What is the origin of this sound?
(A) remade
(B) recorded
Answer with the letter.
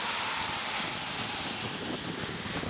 B